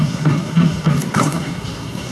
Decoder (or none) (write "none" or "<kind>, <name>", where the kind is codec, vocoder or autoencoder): codec, SNAC